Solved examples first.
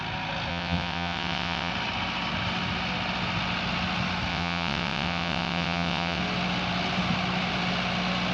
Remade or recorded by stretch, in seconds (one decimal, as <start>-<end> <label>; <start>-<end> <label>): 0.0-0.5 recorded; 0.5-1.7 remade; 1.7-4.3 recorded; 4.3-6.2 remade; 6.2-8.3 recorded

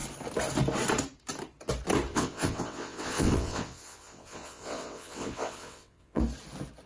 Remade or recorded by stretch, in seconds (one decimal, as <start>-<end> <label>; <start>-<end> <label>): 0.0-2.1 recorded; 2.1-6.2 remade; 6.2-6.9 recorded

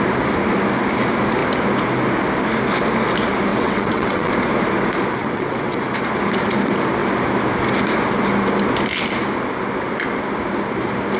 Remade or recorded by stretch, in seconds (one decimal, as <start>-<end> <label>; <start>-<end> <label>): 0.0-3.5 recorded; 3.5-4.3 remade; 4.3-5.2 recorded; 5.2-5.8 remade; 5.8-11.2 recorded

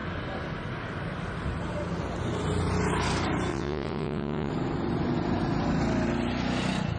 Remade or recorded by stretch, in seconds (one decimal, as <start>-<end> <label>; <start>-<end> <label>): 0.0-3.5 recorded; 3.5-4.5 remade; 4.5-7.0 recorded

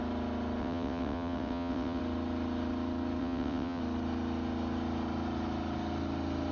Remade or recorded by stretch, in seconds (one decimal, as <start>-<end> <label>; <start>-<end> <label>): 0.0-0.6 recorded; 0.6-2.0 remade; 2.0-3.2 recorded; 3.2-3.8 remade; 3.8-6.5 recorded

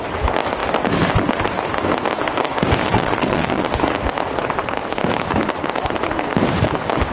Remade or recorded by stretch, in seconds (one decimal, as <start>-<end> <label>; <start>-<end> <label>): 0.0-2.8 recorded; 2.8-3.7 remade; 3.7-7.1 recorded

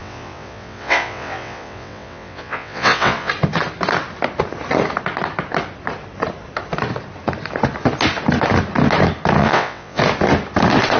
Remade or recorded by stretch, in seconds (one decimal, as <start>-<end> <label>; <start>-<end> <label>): 0.0-3.3 remade; 3.3-9.4 recorded; 9.4-10.0 remade; 10.0-11.0 recorded